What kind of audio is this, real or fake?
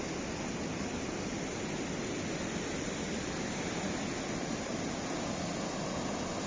real